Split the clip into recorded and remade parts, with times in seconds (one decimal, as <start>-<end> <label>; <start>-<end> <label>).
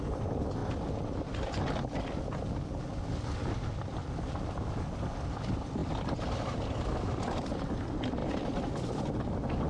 0.0-5.8 recorded; 5.8-6.6 remade; 6.6-8.2 recorded; 8.2-9.0 remade; 9.0-9.7 recorded